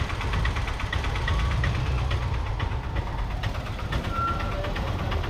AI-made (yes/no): no